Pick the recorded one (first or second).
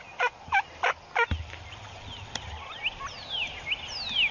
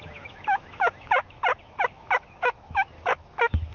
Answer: first